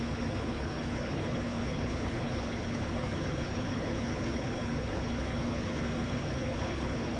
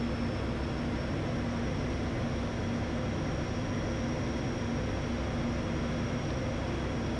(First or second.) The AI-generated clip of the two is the first